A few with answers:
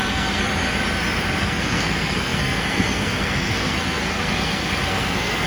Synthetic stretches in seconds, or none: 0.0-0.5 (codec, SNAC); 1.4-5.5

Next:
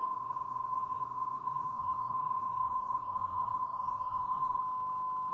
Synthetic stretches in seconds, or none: 0.0-4.6 (codec, SNAC)

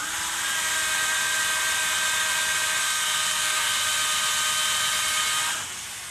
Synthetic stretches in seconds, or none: 2.8-3.8 (codec, SNAC)

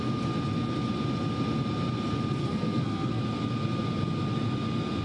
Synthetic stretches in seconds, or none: 2.4-3.2 (codec, SNAC)

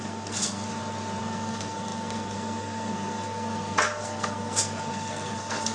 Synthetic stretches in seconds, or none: 0.0-0.7 (codec, SNAC); 1.2-5.7

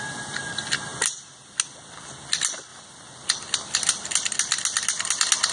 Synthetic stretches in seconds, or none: none